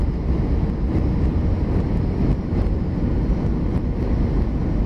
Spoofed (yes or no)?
no